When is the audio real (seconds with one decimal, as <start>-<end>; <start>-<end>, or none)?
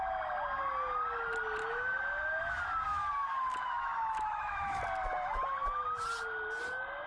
0.0-1.6; 2.4-3.0; 4.8-7.1